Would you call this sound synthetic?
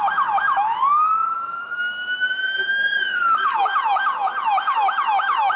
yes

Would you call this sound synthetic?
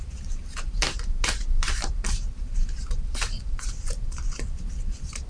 yes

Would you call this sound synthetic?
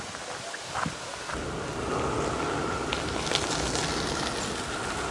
no